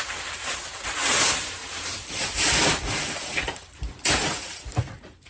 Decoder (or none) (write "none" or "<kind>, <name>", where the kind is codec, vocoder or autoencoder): vocoder, BigVGAN v2